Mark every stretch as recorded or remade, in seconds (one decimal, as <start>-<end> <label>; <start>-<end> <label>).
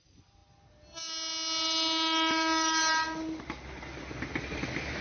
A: 0.0-5.0 recorded